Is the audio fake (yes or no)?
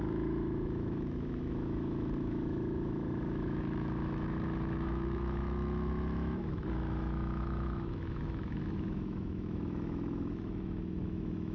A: yes